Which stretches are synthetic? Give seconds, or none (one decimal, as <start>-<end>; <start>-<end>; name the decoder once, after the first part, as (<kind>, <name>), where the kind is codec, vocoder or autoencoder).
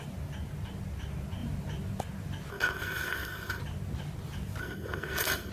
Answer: 2.5-3.6 (codec, SNAC); 4.6-5.5